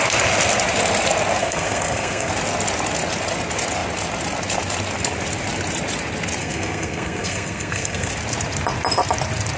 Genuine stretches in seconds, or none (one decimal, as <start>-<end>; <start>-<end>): 0.0-1.4; 2.3-6.4; 8.1-9.6